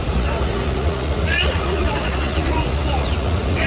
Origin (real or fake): fake